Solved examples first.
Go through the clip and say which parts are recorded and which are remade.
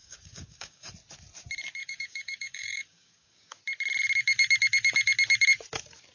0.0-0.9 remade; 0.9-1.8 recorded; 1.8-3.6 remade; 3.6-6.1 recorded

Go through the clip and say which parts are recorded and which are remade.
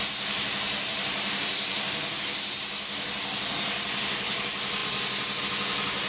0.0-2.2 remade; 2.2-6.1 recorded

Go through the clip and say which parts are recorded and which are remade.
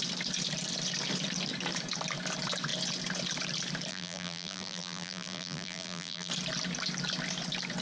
0.0-3.9 recorded; 3.9-6.3 remade; 6.3-7.8 recorded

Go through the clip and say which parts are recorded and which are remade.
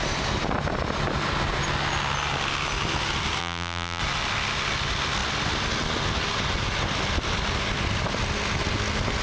0.0-3.4 recorded; 3.4-4.0 remade; 4.0-9.2 recorded